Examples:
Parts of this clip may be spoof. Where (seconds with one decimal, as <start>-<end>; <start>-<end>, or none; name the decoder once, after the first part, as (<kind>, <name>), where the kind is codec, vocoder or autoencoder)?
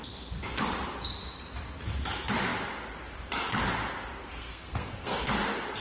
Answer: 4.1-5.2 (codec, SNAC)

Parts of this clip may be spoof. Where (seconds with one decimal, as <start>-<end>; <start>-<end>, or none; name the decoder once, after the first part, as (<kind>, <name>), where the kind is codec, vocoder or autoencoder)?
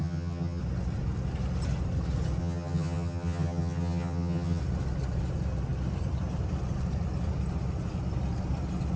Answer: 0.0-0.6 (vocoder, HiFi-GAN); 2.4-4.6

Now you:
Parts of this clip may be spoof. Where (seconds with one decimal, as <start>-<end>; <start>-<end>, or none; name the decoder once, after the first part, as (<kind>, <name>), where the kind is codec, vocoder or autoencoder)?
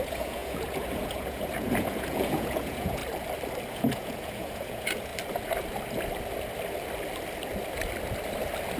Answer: 0.0-3.0 (vocoder, Vocos); 3.7-5.1